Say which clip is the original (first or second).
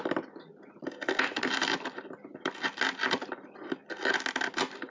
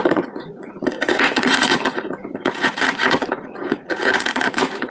first